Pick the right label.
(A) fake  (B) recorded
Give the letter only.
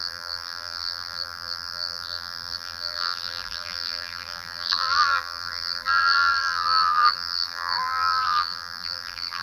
A